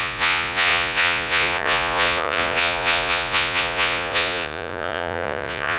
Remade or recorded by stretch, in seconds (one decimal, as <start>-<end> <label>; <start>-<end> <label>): 0.0-5.8 remade